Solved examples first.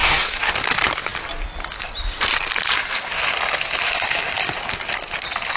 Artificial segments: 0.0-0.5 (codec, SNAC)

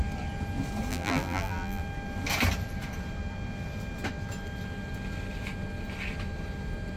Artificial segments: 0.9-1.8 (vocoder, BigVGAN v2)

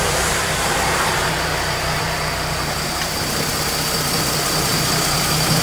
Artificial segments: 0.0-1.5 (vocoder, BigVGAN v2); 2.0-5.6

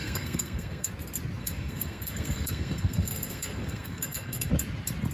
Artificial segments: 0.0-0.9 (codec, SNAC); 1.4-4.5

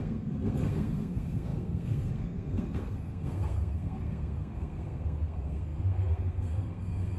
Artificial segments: 0.0-7.2 (codec, SNAC)